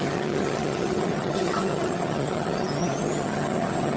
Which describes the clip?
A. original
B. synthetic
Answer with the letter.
B